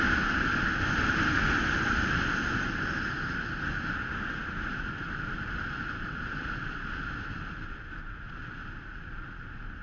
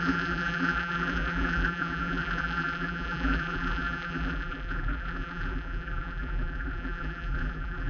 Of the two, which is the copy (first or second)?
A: second